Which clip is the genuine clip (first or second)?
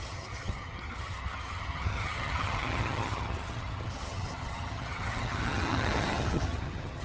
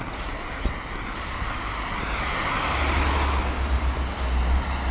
second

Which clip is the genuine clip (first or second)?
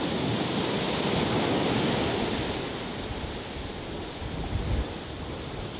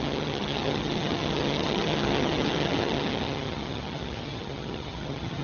first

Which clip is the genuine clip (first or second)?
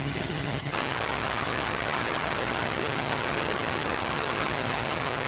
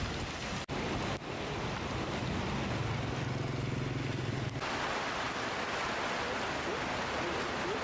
second